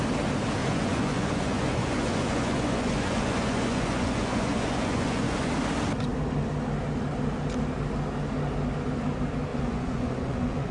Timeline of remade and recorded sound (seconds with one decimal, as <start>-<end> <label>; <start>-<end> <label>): 0.0-0.6 recorded; 0.6-5.5 remade; 5.5-9.5 recorded; 9.5-10.7 remade